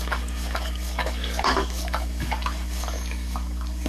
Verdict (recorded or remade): remade